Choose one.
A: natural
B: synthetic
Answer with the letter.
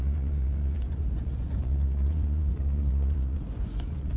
B